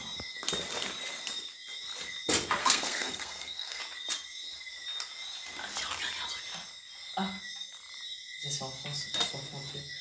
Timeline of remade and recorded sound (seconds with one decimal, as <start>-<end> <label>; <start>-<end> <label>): 0.0-2.6 recorded; 2.6-3.8 remade; 3.8-10.0 recorded